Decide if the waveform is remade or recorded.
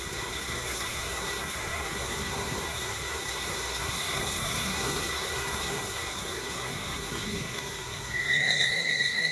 remade